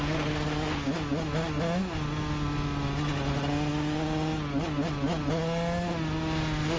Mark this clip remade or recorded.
recorded